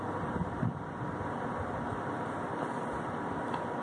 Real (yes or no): yes